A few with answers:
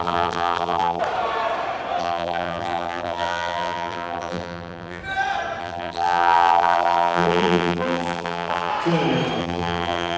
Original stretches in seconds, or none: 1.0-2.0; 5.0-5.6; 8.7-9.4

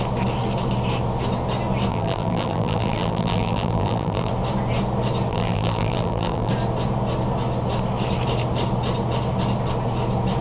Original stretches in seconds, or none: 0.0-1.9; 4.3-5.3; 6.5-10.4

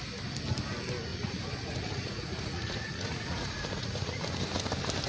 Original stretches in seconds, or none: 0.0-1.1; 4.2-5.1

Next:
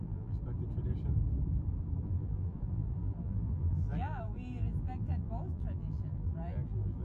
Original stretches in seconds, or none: 0.4-2.0

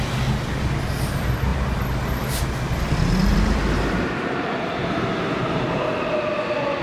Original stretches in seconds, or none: 0.0-3.3; 6.1-6.8

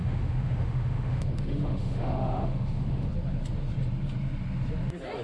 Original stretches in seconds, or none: 3.1-5.2

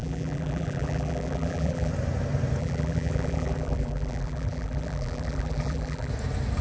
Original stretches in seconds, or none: 1.9-2.6; 6.1-6.6